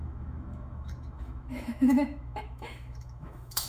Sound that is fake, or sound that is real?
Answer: fake